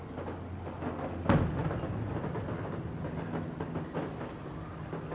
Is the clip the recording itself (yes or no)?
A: yes